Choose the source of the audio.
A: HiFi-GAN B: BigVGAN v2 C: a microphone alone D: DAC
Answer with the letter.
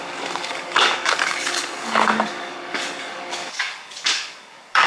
D